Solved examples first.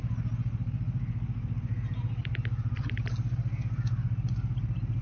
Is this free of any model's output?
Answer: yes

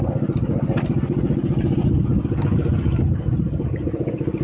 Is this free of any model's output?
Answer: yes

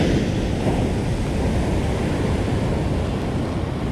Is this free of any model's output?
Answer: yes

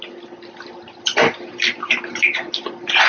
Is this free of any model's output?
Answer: yes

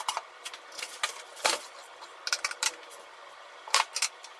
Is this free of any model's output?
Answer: yes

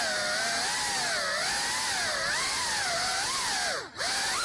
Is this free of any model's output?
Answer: yes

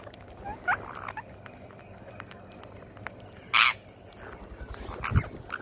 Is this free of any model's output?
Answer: yes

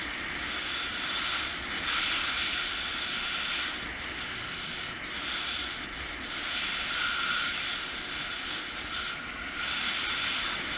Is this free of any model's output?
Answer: yes